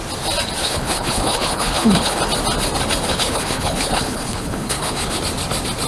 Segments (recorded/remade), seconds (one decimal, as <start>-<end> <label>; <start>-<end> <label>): 0.0-0.6 recorded; 0.6-2.2 remade; 2.2-3.1 recorded; 3.1-5.2 remade; 5.2-5.9 recorded